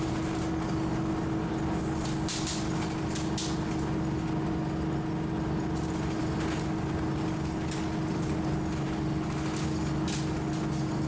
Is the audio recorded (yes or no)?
yes